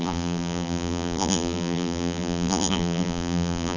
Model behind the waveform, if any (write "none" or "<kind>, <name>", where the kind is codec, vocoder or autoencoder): vocoder, BigVGAN v2